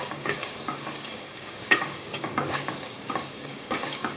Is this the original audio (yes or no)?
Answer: no